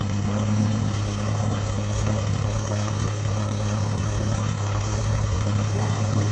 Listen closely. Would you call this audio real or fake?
fake